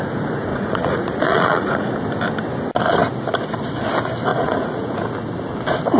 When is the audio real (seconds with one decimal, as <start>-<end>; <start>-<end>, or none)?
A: 0.0-0.5; 1.9-4.3; 5.1-6.0